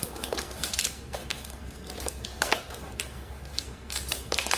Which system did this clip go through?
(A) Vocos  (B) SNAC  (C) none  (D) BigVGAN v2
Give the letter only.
B